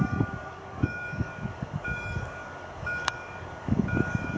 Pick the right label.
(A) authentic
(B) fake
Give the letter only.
B